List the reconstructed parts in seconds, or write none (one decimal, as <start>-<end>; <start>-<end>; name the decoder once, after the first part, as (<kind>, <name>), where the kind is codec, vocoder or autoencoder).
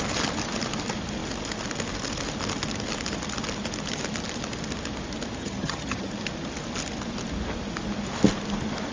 5.4-6.1 (vocoder, HiFi-GAN)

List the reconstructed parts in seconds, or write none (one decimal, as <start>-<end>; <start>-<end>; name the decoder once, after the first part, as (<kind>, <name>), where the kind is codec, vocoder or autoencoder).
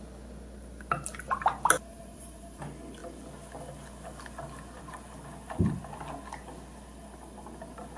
1.9-2.6 (vocoder, BigVGAN v2)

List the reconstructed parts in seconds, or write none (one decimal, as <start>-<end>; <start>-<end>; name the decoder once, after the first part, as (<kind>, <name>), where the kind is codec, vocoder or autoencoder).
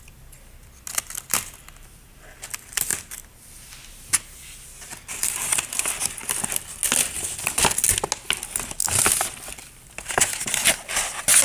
2.9-3.5 (vocoder, BigVGAN v2)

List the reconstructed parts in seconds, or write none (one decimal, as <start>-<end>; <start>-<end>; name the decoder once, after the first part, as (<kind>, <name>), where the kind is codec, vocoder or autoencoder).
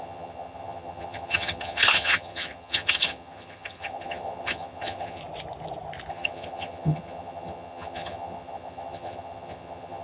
0.0-5.2 (vocoder, HiFi-GAN); 6.1-10.0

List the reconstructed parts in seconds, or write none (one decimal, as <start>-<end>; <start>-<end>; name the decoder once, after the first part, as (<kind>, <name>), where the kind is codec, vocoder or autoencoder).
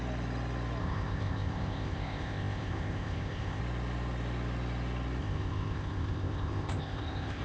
0.8-3.6 (codec, ZipCodec); 5.2-7.4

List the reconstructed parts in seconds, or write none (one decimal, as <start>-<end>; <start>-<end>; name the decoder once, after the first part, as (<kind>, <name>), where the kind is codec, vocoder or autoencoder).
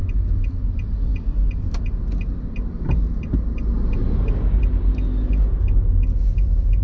none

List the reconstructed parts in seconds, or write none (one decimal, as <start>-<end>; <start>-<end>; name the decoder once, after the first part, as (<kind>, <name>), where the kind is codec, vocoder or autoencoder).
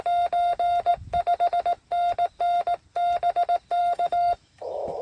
3.8-5.0 (autoencoder, DAC-VAE)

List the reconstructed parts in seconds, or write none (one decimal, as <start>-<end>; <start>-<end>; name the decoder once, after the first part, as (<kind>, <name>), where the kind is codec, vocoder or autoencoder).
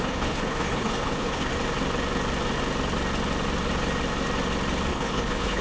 0.0-1.5 (codec, HILCodec); 4.9-5.6